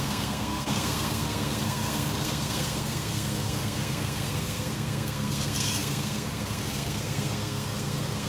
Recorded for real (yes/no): no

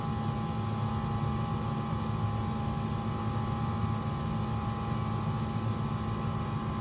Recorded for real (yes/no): yes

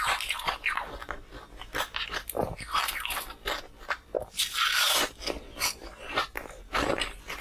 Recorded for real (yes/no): yes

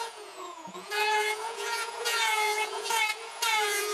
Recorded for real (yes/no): no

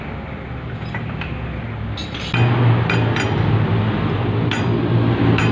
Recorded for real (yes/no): yes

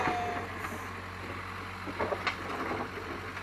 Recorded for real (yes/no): yes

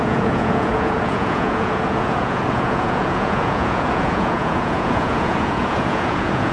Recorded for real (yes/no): no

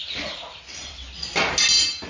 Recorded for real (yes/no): yes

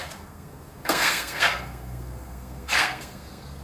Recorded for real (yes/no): no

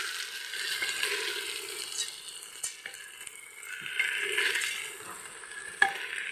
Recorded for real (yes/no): yes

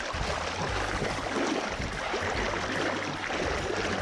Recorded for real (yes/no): yes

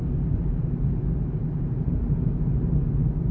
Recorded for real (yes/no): yes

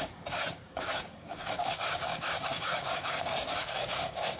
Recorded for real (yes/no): no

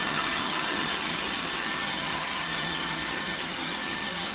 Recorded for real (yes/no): no